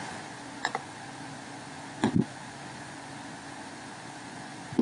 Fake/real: fake